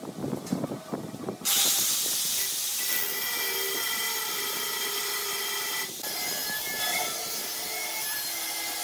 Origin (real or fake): real